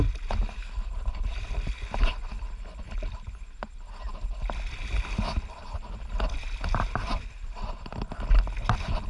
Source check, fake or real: real